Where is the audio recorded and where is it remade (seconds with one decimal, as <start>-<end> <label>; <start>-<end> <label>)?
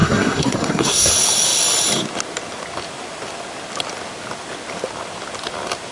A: 0.0-1.1 remade; 1.1-5.9 recorded